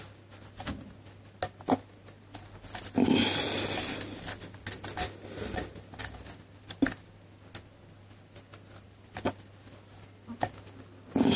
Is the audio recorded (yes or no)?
yes